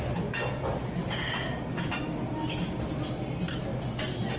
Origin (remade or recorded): recorded